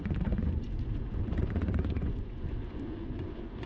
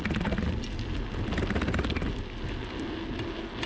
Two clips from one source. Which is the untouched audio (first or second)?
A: second